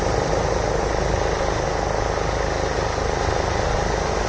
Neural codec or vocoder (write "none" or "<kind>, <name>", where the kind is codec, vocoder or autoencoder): none